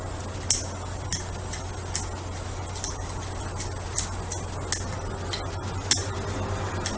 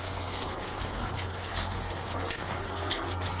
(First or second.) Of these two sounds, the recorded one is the first